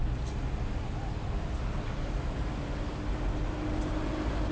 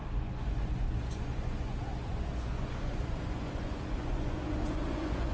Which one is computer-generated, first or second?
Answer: second